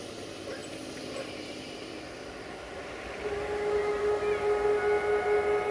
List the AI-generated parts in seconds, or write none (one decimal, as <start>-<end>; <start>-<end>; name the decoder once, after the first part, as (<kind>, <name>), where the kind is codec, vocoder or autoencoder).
none